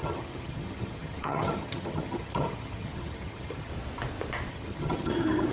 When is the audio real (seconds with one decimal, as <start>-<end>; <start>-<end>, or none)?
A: 3.7-4.5